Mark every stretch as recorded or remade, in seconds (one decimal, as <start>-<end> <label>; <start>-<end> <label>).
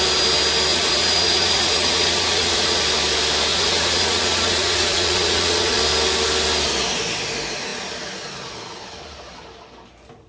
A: 0.0-0.7 recorded; 0.7-2.8 remade; 2.8-3.5 recorded; 3.5-5.8 remade; 5.8-10.3 recorded